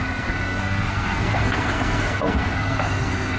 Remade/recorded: remade